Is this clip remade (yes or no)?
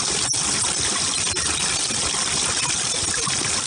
no